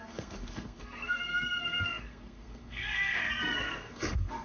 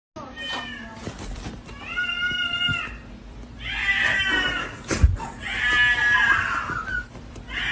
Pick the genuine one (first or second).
second